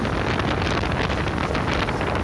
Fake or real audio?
real